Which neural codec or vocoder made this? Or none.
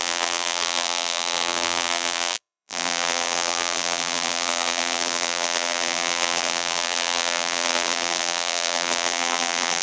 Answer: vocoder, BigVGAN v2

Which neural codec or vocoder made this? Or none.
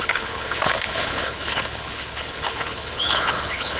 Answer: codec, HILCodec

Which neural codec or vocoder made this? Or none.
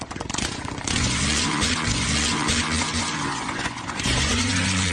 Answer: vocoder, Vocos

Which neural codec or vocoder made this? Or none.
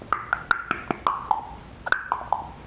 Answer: none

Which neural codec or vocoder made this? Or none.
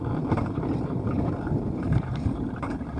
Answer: vocoder, BigVGAN v2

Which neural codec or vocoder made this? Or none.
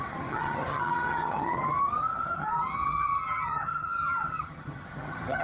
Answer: vocoder, HiFi-GAN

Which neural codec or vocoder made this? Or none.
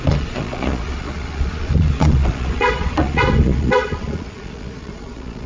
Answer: vocoder, Vocos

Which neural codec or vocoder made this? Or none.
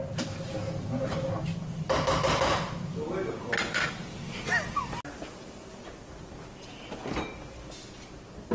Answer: none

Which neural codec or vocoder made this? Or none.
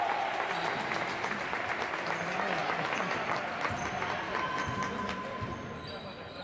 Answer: none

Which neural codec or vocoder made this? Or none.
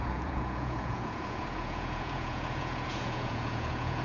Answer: vocoder, Vocos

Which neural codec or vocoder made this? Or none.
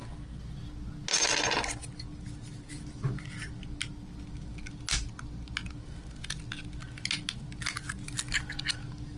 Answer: none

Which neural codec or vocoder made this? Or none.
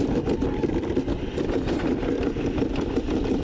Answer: vocoder, BigVGAN v2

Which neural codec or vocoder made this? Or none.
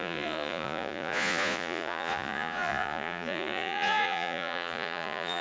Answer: vocoder, Vocos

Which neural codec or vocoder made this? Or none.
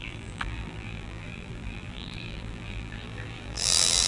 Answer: vocoder, BigVGAN v2